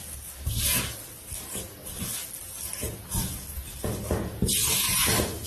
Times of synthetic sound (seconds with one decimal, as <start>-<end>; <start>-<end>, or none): none